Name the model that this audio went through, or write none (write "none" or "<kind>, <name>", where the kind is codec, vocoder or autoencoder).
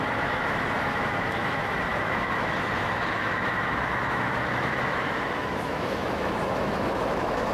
autoencoder, DAC-VAE